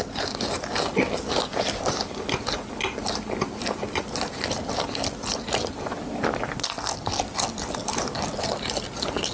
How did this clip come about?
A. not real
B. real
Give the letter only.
B